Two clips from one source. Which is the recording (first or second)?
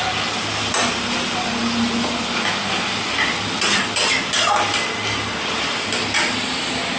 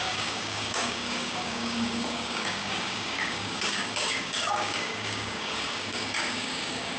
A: first